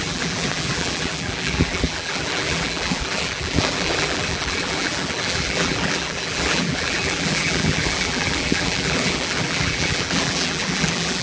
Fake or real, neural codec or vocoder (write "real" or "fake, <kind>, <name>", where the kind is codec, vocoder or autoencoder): fake, vocoder, BigVGAN v2